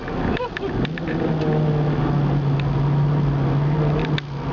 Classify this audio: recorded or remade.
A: recorded